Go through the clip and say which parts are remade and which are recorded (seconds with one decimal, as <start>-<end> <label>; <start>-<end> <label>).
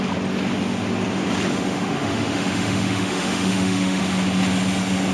0.0-1.5 recorded; 1.5-4.0 remade; 4.0-5.1 recorded